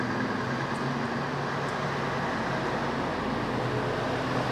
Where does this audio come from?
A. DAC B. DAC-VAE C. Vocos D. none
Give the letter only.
D